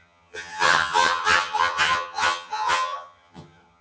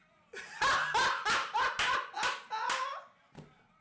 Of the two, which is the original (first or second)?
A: second